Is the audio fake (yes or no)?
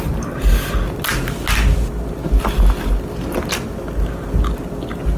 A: no